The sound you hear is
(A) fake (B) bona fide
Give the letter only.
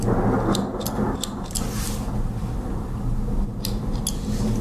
B